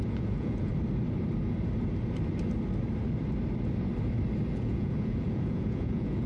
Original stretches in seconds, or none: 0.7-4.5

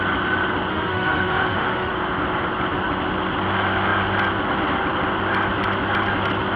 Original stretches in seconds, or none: 0.0-0.7; 1.9-6.6

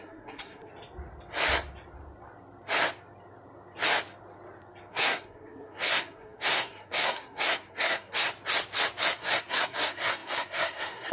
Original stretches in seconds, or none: 0.7-4.9; 8.3-9.1

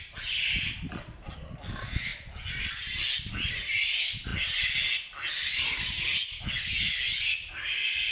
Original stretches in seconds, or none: 0.0-8.1